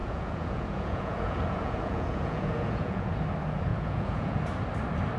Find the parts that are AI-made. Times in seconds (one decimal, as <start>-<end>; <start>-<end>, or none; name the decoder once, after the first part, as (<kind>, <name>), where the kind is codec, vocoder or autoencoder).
0.0-3.1 (vocoder, Vocos); 3.7-4.4